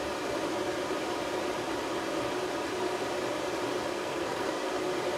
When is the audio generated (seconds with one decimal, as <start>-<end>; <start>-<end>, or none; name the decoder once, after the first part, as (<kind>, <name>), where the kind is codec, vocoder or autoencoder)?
3.9-4.8 (codec, SNAC)